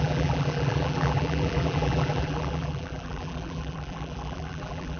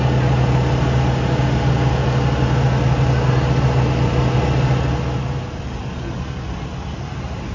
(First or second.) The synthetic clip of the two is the first